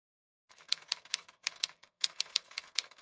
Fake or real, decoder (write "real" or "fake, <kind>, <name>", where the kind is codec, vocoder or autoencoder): fake, codec, SNAC